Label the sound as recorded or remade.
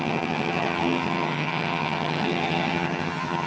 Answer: remade